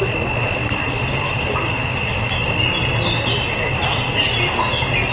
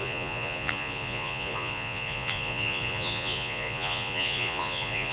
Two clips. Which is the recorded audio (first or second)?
first